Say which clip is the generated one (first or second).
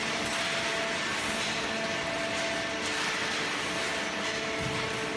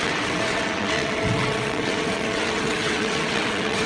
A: second